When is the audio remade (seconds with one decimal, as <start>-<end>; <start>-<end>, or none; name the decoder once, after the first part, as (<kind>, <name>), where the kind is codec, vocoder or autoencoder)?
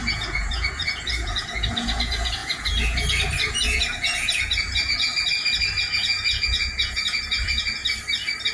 0.0-5.1 (vocoder, Vocos); 5.8-7.8